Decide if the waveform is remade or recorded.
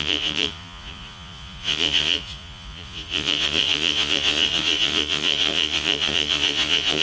remade